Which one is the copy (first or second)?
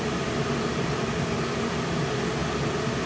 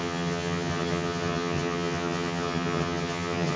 second